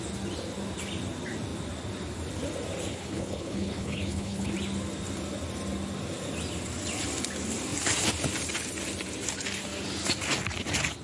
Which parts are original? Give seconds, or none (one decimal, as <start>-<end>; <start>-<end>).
0.0-2.9; 4.5-11.0